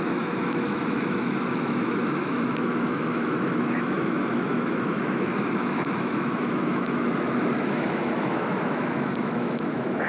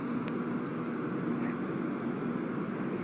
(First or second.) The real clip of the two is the second